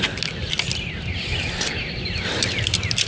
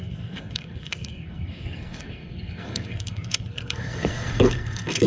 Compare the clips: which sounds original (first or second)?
first